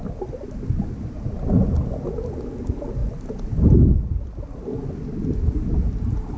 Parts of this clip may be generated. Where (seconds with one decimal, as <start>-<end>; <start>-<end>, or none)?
none